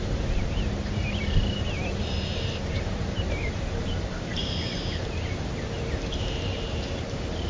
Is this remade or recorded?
remade